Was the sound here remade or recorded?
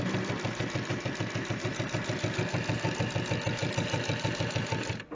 recorded